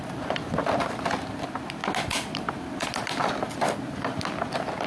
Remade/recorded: remade